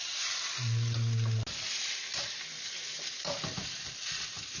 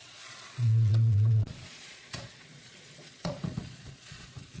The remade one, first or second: second